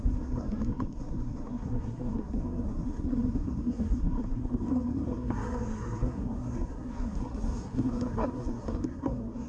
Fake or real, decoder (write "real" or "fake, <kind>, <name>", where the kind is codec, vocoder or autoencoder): fake, codec, SNAC